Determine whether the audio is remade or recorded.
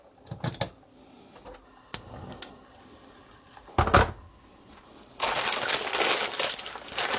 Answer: recorded